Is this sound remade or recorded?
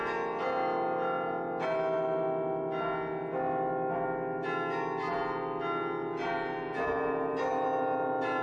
recorded